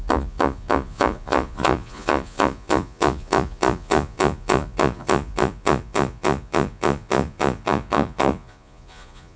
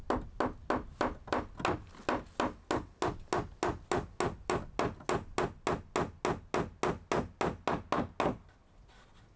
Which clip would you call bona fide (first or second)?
second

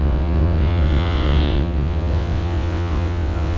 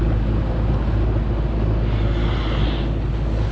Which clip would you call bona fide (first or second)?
second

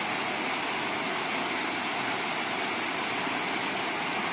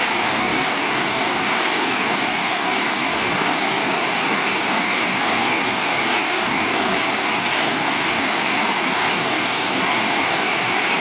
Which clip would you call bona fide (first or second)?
first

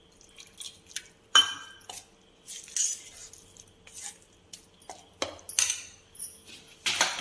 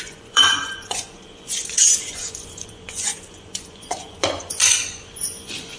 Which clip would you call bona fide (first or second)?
first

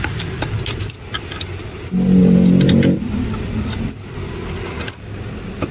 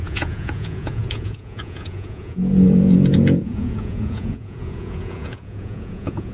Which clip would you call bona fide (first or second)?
first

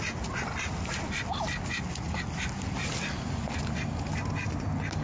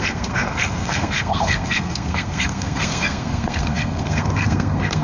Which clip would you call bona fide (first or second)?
first